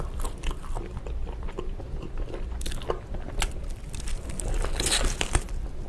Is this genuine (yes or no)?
yes